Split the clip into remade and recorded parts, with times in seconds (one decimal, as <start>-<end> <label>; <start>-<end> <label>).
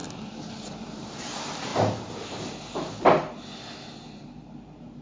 0.0-0.8 recorded; 0.8-1.7 remade; 1.7-4.2 recorded; 4.2-5.0 remade